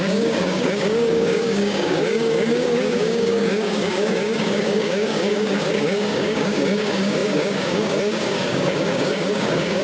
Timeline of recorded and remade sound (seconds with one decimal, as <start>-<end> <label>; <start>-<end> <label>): 0.0-9.8 remade